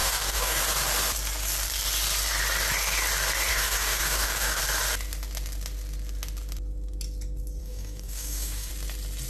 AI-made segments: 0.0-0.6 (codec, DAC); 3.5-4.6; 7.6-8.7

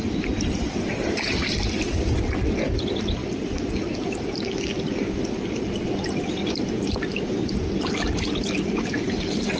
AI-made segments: none

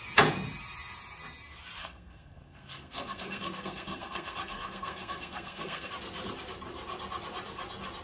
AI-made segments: 1.8-5.9 (codec, SNAC)

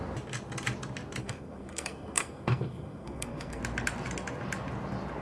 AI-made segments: 1.2-3.6 (codec, SNAC)